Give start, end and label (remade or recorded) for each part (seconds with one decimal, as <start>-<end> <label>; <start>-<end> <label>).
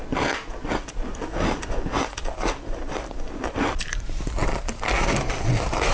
0.0-5.9 recorded